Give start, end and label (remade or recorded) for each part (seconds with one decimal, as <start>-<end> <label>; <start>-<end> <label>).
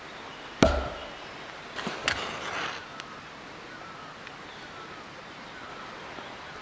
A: 0.0-6.6 recorded